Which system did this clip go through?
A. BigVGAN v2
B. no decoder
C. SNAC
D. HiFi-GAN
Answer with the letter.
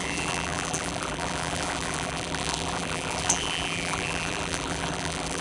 A